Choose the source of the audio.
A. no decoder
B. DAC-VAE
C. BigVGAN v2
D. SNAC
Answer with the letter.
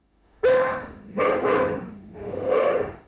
B